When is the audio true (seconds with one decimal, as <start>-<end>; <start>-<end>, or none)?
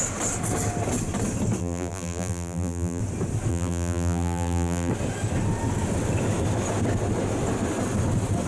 0.0-1.6; 3.0-3.5; 4.9-8.5